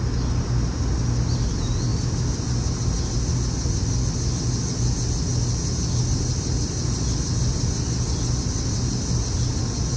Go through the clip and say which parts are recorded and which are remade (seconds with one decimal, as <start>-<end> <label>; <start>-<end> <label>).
0.0-10.0 recorded